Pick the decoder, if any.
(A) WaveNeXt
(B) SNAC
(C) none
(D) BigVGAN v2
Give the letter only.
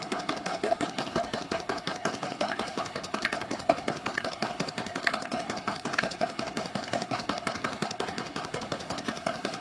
B